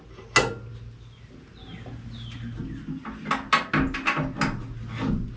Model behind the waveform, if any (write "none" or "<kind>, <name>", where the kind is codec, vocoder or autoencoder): none